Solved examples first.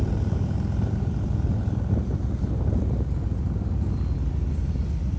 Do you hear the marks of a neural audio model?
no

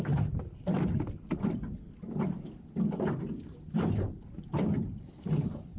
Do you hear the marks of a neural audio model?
no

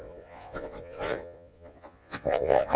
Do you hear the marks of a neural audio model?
yes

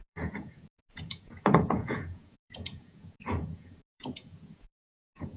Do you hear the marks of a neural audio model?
yes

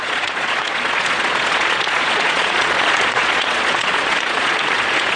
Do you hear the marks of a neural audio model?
yes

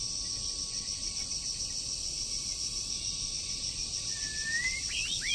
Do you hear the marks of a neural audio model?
no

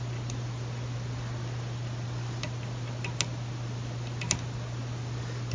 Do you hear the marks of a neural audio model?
no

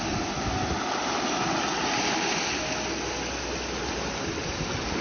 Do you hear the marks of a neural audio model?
no